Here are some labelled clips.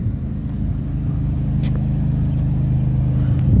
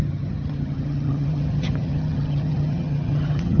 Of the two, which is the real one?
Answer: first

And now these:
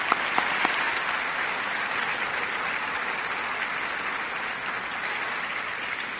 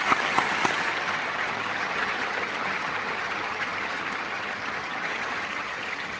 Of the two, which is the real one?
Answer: first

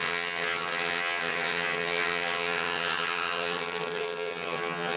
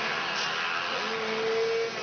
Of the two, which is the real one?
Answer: second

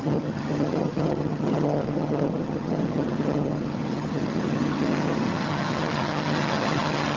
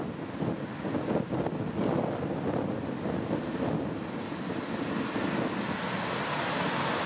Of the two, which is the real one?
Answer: second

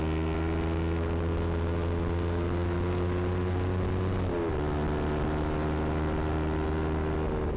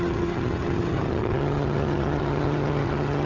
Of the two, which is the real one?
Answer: first